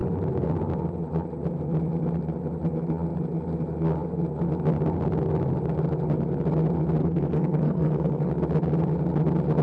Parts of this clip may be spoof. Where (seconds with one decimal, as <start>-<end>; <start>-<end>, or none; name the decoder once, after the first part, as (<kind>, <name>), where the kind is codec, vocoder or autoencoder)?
7.0-8.3 (codec, SNAC)